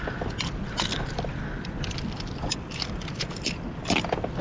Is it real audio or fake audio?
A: real